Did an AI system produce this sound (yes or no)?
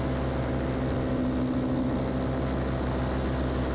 no